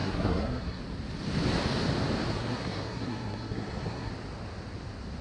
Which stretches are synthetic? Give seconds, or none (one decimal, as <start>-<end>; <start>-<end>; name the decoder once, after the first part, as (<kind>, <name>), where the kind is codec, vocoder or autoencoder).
0.0-0.8 (codec, SNAC); 2.3-4.1